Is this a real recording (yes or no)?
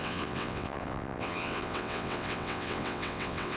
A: no